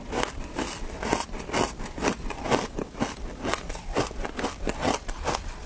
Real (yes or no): yes